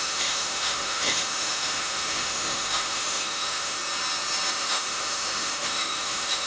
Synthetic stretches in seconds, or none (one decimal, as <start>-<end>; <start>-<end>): 0.0-3.8; 4.5-6.5